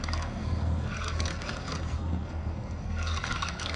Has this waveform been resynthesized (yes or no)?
yes